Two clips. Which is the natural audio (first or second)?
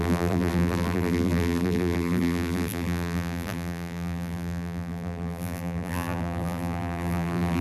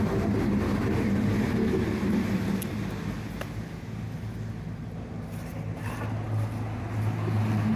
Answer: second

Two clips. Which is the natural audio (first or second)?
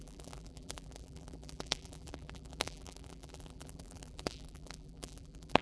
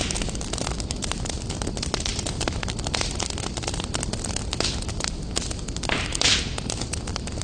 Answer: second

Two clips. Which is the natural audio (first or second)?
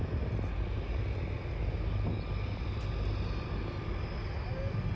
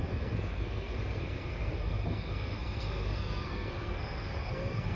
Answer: first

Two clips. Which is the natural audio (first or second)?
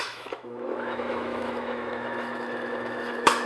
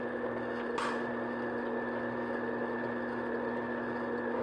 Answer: second